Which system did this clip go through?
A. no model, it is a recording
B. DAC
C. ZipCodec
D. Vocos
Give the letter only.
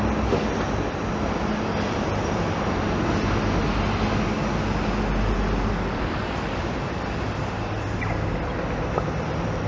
A